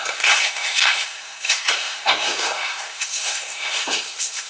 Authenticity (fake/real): fake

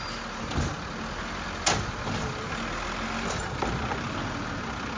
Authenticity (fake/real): real